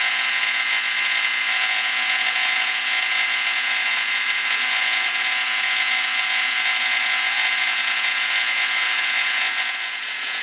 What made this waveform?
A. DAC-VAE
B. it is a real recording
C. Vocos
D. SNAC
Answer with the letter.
C